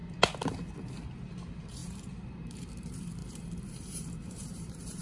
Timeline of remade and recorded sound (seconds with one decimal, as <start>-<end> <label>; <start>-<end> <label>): 0.0-1.3 recorded; 1.3-5.0 remade